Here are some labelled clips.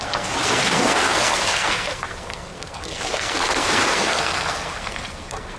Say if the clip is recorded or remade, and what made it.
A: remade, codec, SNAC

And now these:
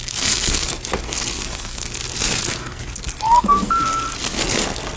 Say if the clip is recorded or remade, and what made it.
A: remade, codec, SNAC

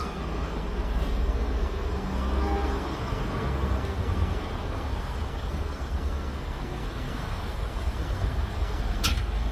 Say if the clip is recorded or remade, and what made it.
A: remade, codec, SNAC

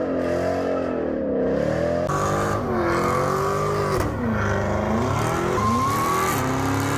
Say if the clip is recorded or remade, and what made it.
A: recorded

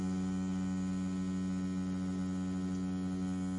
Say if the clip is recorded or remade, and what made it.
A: recorded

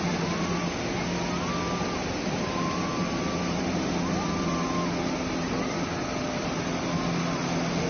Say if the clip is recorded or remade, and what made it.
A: recorded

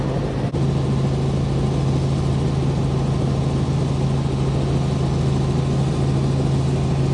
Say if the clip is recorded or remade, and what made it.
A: recorded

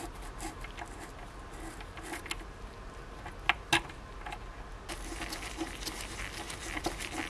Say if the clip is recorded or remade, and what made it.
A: recorded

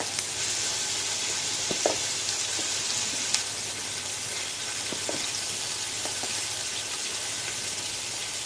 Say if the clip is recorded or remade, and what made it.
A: recorded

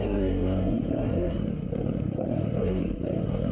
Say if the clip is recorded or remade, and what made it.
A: remade, codec, SNAC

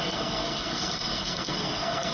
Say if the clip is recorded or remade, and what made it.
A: remade, codec, SNAC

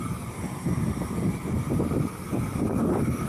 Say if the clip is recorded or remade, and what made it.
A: recorded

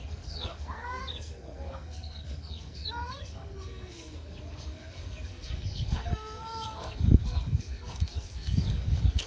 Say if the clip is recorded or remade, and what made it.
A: remade, codec, SNAC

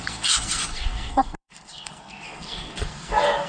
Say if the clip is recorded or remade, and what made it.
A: remade, codec, SNAC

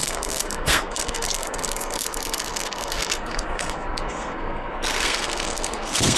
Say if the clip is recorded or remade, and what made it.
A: remade, codec, SNAC